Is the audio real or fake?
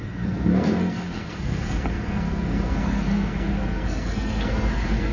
fake